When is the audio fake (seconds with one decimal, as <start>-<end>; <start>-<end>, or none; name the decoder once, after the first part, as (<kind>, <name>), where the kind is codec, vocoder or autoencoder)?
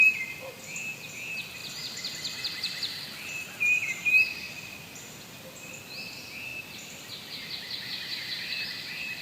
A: 1.6-5.7 (vocoder, BigVGAN v2); 6.5-7.3